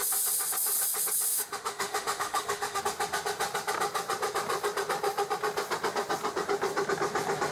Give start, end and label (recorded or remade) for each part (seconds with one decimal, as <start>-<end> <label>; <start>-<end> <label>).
0.0-1.3 recorded; 1.3-2.8 remade; 2.8-7.5 recorded